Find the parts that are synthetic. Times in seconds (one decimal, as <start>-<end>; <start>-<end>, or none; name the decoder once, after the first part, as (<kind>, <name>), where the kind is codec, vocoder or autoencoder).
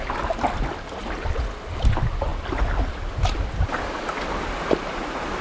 none